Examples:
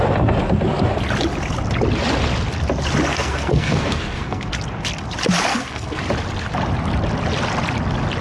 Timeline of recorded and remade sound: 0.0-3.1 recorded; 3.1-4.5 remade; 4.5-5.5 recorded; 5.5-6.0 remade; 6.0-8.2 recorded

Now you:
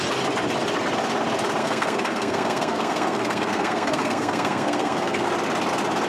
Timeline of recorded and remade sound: 0.0-1.6 recorded; 1.6-5.3 remade; 5.3-6.1 recorded

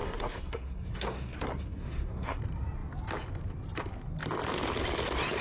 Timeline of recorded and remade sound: 0.0-2.4 remade; 2.4-5.4 recorded

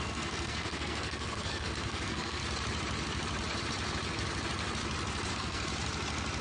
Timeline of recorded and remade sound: 0.0-2.4 remade; 2.4-5.3 recorded; 5.3-5.7 remade; 5.7-6.4 recorded

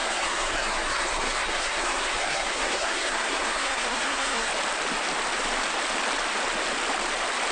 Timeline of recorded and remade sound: 0.0-4.5 remade; 4.5-7.5 recorded

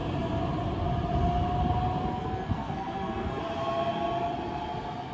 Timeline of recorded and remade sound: 0.0-2.1 recorded; 2.1-3.4 remade; 3.4-5.1 recorded

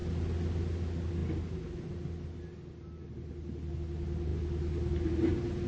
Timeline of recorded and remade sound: 0.0-5.7 recorded